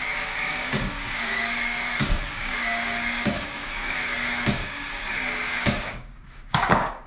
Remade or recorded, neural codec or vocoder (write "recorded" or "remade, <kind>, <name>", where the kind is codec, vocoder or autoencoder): remade, codec, DAC